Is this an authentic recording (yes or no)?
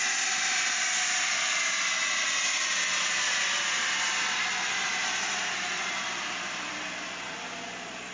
yes